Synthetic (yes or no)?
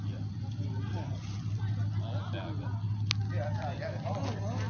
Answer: no